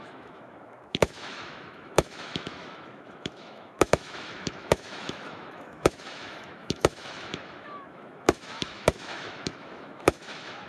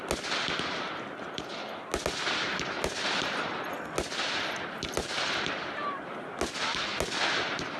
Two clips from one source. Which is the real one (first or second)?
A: second